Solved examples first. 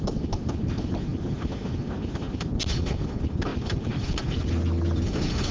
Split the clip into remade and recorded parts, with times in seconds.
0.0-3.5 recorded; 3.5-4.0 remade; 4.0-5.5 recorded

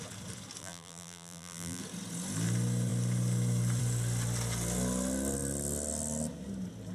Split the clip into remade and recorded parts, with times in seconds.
0.0-0.6 recorded; 0.6-1.8 remade; 1.8-6.9 recorded

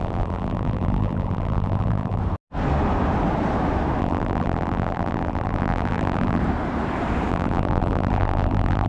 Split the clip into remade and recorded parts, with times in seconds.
0.0-2.2 remade; 2.2-4.0 recorded; 4.0-6.4 remade; 6.4-7.3 recorded; 7.3-8.9 remade

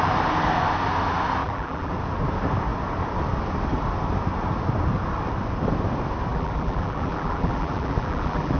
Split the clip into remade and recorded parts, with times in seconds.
0.0-1.4 recorded; 1.4-1.9 remade; 1.9-6.3 recorded; 6.3-8.6 remade

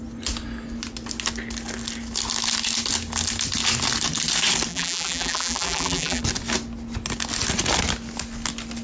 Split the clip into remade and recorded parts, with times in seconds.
0.0-4.7 recorded; 4.7-6.2 remade; 6.2-8.8 recorded

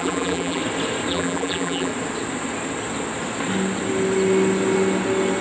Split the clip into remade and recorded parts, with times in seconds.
0.0-0.6 remade; 0.6-1.1 recorded; 1.1-1.9 remade; 1.9-5.4 recorded

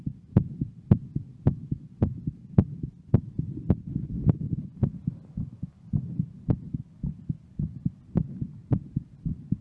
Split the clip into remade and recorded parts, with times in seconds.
0.0-1.3 remade; 1.3-4.6 recorded; 4.6-5.0 remade; 5.0-6.2 recorded; 6.2-9.6 remade

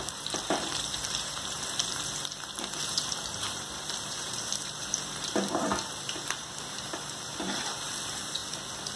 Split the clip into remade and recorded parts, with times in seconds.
0.0-8.4 remade; 8.4-9.0 recorded